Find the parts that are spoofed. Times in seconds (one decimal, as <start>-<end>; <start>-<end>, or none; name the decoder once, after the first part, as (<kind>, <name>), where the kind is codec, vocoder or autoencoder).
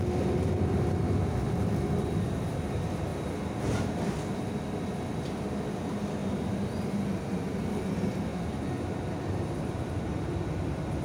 3.1-3.8 (vocoder, BigVGAN v2); 6.2-7.9; 8.3-10.1